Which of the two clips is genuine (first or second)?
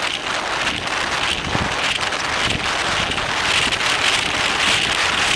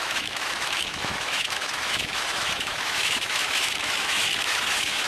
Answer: first